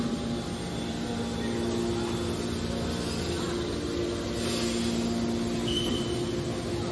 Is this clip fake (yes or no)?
no